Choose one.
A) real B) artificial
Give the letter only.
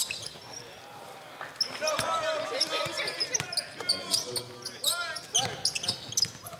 A